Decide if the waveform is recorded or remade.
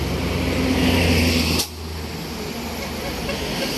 recorded